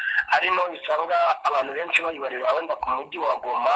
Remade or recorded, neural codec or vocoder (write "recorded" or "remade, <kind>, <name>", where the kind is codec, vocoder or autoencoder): remade, codec, HILCodec